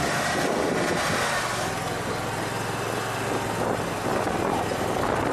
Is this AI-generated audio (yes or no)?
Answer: no